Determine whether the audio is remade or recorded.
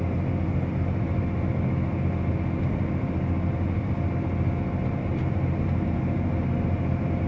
recorded